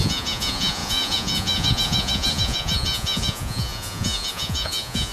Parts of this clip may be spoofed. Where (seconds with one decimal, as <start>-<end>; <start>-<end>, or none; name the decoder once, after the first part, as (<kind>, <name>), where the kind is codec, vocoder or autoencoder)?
0.0-5.1 (vocoder, Vocos)